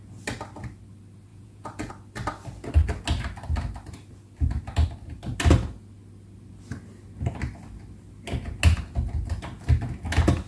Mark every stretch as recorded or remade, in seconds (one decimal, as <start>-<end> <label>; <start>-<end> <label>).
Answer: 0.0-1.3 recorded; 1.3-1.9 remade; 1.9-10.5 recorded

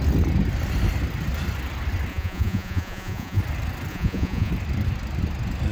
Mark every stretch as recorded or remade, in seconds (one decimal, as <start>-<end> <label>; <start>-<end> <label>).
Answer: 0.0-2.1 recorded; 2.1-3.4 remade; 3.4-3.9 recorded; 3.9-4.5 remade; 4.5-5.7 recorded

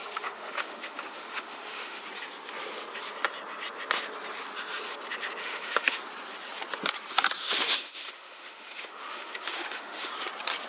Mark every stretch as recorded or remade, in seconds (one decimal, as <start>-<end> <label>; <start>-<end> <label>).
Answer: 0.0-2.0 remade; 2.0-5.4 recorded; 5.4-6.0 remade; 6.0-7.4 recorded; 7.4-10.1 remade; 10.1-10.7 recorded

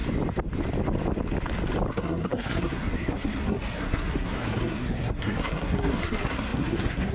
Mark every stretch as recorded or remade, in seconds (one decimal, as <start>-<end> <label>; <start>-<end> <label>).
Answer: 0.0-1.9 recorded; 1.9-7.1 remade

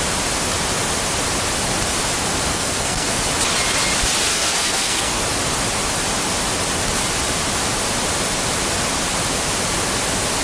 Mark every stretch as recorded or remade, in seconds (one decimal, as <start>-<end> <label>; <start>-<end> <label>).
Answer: 0.0-2.5 recorded; 2.5-3.2 remade; 3.2-4.3 recorded; 4.3-5.2 remade; 5.2-10.4 recorded

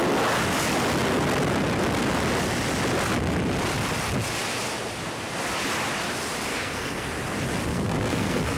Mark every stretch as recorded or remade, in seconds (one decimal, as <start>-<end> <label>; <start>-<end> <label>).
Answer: 0.0-6.5 recorded; 6.5-7.1 remade; 7.1-7.7 recorded; 7.7-8.6 remade

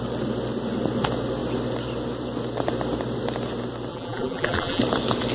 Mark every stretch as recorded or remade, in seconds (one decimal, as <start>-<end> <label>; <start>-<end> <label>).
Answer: 0.0-3.9 recorded; 3.9-4.8 remade; 4.8-5.3 recorded

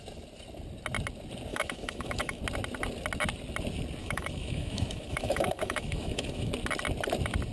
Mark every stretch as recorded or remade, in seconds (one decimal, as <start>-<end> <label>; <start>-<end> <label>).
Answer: 0.0-1.5 recorded; 1.5-2.4 remade; 2.4-4.0 recorded; 4.0-6.5 remade; 6.5-7.5 recorded